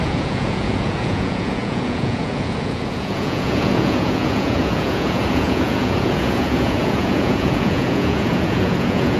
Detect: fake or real fake